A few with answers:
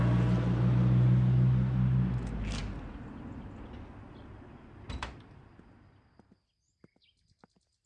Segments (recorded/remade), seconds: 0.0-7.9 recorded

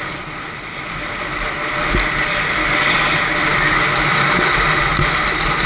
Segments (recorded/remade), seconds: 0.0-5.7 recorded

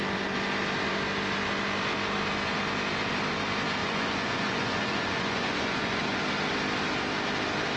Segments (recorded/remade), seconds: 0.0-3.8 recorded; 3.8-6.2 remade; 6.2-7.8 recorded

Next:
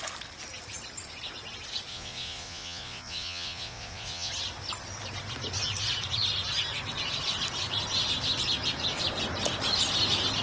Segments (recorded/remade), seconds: 0.0-1.9 recorded; 1.9-4.3 remade; 4.3-10.4 recorded